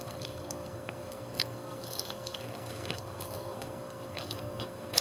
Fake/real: fake